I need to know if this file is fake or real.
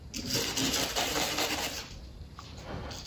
real